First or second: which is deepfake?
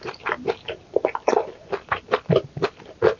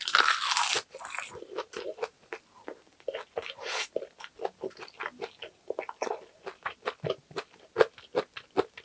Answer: first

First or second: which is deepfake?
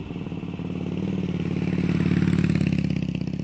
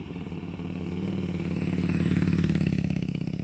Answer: second